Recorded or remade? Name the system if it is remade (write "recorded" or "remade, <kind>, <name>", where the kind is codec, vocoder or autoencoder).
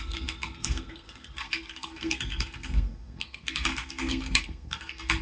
remade, codec, SNAC